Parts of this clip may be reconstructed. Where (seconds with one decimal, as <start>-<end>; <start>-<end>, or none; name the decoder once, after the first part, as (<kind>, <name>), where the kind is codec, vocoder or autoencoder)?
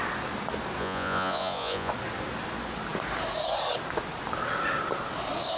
0.8-1.9 (vocoder, Vocos)